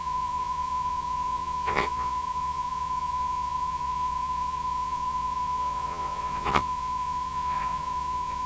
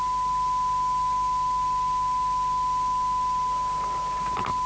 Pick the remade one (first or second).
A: first